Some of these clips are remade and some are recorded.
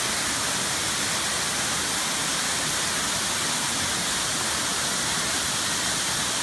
recorded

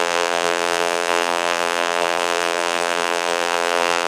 remade